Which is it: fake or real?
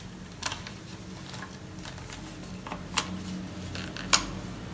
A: real